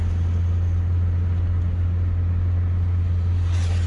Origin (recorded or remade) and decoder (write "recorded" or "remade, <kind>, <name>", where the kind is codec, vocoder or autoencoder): recorded